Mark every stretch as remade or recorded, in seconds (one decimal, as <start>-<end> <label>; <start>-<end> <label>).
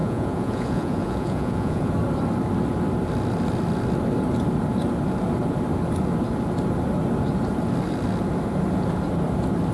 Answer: 0.0-1.9 remade; 1.9-9.7 recorded